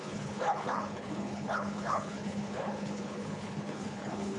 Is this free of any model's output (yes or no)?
no